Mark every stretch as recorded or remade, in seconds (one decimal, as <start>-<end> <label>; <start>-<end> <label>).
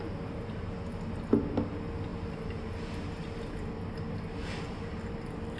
0.0-5.6 recorded